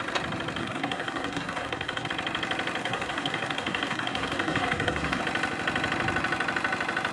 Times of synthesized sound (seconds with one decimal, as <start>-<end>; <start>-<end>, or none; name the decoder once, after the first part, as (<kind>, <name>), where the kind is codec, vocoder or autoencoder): 0.6-2.1 (codec, SNAC); 2.8-5.2

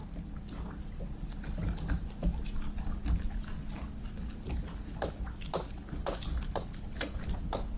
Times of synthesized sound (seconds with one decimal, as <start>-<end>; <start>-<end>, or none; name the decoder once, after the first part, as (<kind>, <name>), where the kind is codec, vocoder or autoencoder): none

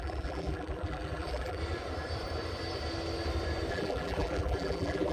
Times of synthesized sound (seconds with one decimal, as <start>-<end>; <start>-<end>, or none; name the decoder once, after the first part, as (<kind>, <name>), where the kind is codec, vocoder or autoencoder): 0.0-1.6 (vocoder, BigVGAN v2); 3.7-5.1

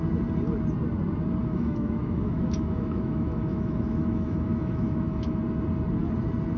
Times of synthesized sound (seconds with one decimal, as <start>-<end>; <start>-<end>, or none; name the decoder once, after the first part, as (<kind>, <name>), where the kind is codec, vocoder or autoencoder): 1.4-5.4 (autoencoder, DAC-VAE)

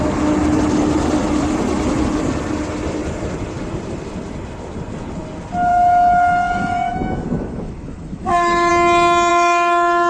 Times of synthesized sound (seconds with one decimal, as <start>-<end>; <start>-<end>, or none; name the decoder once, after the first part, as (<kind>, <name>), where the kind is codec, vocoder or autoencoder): 5.7-8.7 (autoencoder, DAC-VAE); 9.3-10.1